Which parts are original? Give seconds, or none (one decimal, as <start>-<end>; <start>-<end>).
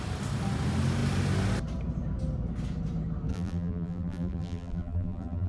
0.0-3.3